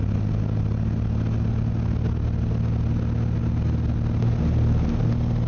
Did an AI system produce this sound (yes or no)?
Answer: no